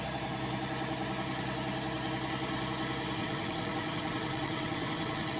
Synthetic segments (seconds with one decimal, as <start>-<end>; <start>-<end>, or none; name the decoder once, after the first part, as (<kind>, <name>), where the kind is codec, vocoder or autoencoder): 3.2-5.4 (vocoder, WaveNeXt)